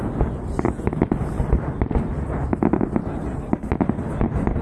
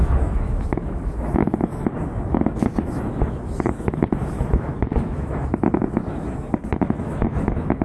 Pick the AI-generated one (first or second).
second